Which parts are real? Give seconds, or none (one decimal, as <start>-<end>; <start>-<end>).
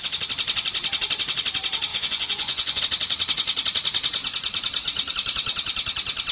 0.0-1.9; 2.8-6.3